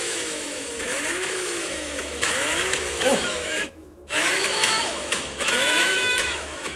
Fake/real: fake